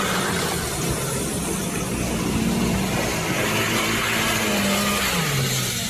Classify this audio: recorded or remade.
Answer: recorded